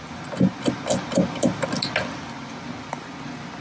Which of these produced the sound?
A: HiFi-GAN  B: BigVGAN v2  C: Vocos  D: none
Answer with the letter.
D